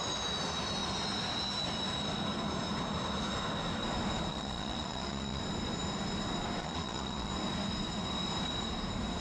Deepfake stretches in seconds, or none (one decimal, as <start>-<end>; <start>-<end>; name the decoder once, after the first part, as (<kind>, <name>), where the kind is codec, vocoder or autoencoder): 4.3-5.4 (vocoder, Vocos); 6.6-7.3